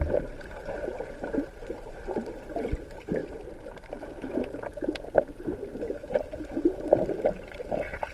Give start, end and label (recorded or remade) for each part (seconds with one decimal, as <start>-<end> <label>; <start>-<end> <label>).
0.0-4.7 recorded; 4.7-7.5 remade; 7.5-8.1 recorded